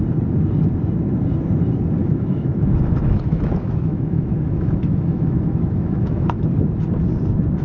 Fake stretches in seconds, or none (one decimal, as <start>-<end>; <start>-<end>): 2.0-6.4